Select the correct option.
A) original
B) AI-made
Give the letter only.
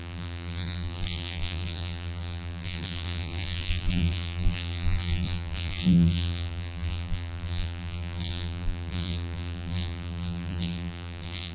B